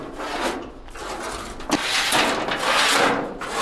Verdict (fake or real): real